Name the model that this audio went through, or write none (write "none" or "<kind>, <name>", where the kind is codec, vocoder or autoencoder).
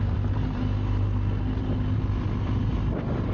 none